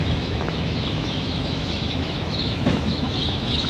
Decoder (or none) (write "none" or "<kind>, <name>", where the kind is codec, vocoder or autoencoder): autoencoder, DAC-VAE